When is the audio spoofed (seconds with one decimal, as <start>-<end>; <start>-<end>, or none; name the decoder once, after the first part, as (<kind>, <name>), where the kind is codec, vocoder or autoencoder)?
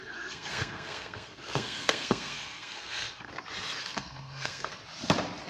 0.0-3.3 (codec, SNAC); 3.8-4.8